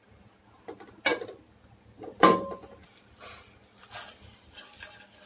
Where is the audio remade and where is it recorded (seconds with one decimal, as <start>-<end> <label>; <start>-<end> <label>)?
0.0-5.3 recorded